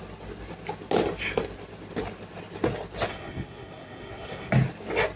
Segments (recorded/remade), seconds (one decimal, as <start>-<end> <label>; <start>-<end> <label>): 0.0-3.1 recorded; 3.1-4.5 remade; 4.5-5.2 recorded